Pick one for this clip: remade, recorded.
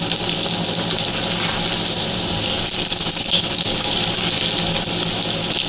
recorded